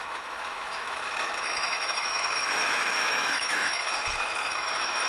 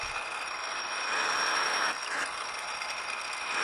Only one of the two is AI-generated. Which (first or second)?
first